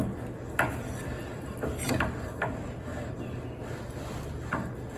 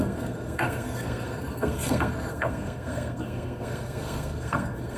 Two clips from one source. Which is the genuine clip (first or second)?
first